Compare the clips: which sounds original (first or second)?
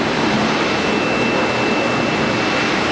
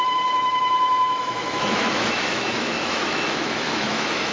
first